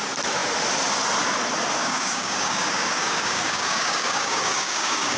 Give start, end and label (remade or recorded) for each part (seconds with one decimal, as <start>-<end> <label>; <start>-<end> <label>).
0.0-1.8 recorded; 1.8-5.2 remade